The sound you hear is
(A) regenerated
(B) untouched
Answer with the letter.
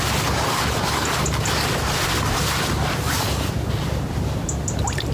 B